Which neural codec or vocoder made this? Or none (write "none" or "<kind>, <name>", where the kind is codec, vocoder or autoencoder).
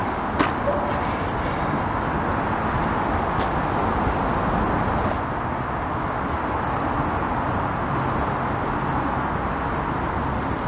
none